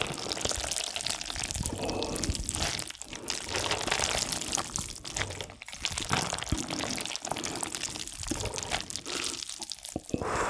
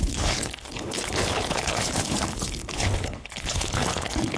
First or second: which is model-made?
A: second